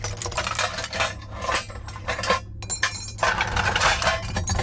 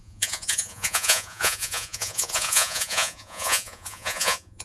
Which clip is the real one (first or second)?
first